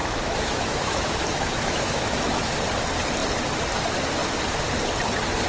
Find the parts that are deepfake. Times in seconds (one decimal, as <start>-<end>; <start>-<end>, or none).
0.0-2.5